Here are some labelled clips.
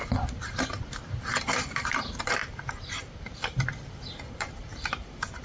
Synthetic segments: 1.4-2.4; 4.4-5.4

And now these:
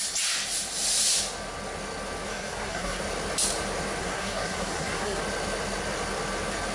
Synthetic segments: 2.3-3.0; 4.0-5.2